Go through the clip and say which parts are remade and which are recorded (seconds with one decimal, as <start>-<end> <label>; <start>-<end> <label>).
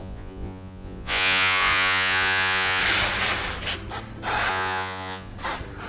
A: 0.0-2.8 remade; 2.8-4.5 recorded; 4.5-5.3 remade; 5.3-5.9 recorded